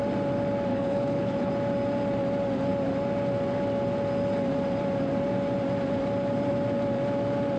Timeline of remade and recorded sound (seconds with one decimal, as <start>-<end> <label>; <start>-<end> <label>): 0.0-0.7 recorded; 0.7-1.5 remade; 1.5-7.6 recorded